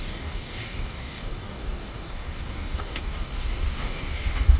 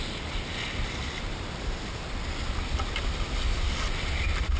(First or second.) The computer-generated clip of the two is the first